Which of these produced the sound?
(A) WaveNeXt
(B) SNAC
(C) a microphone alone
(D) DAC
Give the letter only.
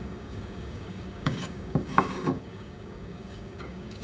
D